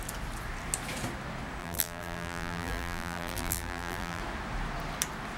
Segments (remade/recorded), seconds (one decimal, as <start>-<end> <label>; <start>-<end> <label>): 0.0-1.6 recorded; 1.6-4.2 remade; 4.2-5.4 recorded